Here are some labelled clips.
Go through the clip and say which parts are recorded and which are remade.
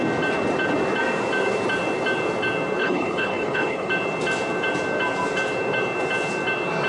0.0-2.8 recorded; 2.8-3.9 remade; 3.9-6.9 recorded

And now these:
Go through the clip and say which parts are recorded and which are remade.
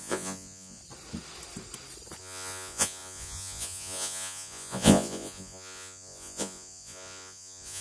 0.0-0.8 remade; 0.8-2.2 recorded; 2.2-7.8 remade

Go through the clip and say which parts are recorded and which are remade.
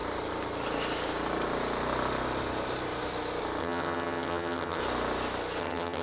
0.0-3.6 recorded; 3.6-4.8 remade; 4.8-5.6 recorded; 5.6-6.0 remade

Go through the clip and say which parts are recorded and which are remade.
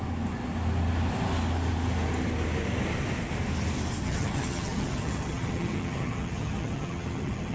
0.0-4.0 recorded; 4.0-7.5 remade